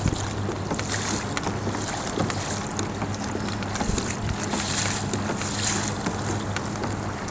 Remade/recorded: recorded